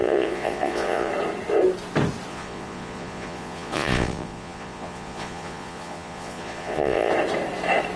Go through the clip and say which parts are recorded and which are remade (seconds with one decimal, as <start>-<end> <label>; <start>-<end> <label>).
0.0-1.1 remade; 1.1-2.3 recorded; 2.3-7.1 remade; 7.1-8.0 recorded